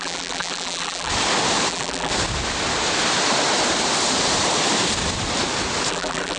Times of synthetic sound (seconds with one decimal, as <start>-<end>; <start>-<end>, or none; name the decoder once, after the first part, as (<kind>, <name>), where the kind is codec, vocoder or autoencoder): 0.0-1.1 (vocoder, BigVGAN v2); 1.7-2.1; 5.9-6.4